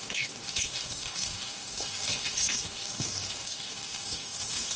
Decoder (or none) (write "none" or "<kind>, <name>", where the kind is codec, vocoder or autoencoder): codec, DAC